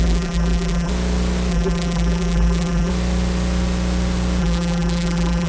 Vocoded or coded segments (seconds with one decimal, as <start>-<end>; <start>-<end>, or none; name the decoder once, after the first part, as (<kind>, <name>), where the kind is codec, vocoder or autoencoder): 0.0-0.9 (vocoder, BigVGAN v2); 1.5-2.9; 4.4-5.5